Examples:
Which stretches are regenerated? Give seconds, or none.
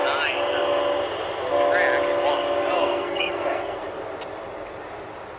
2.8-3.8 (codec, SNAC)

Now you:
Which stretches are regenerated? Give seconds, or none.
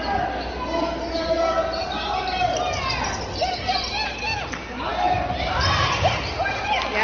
none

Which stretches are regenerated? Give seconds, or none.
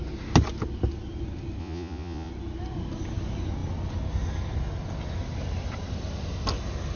1.6-2.3 (vocoder, Vocos)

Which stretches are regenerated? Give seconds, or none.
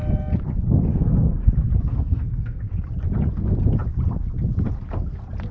0.9-1.5 (codec, SNAC); 1.9-2.6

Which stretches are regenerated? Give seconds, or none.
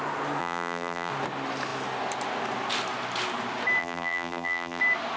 0.4-1.1 (vocoder, BigVGAN v2); 3.8-4.8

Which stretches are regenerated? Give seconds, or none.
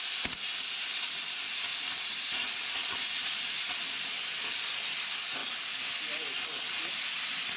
1.7-2.6 (vocoder, BigVGAN v2)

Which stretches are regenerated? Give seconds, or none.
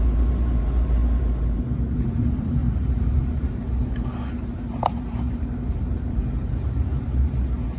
0.0-7.8 (vocoder, BigVGAN v2)